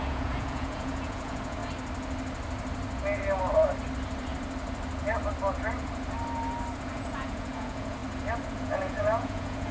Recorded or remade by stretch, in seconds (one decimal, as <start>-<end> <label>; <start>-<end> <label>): 0.0-1.6 remade; 1.6-6.8 recorded; 6.8-8.0 remade; 8.0-8.5 recorded; 8.5-9.7 remade